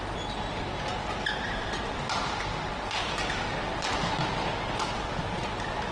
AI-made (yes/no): no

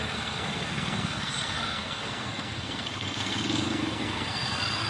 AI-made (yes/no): yes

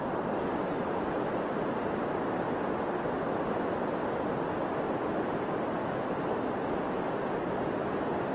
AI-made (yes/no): no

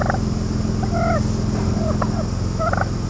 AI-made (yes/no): no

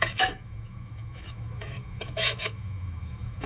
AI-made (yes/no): yes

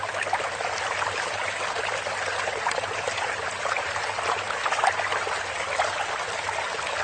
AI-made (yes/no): no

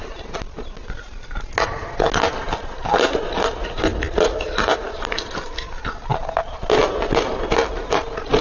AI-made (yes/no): no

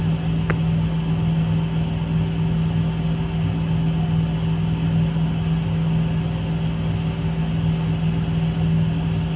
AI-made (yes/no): no